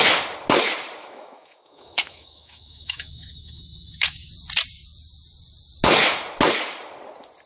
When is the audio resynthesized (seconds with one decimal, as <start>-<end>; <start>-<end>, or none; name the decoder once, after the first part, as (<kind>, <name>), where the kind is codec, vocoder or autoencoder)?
1.0-4.3 (autoencoder, DAC-VAE)